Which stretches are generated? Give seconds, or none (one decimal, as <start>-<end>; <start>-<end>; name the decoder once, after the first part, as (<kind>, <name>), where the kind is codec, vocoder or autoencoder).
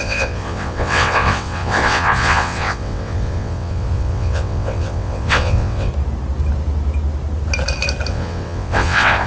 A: 0.0-5.9 (vocoder, WaveNeXt); 8.1-9.3